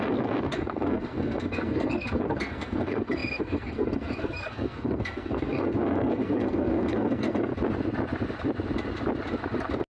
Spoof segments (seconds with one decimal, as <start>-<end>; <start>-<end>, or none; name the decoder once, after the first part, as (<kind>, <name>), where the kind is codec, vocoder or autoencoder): 0.0-7.5 (codec, SNAC)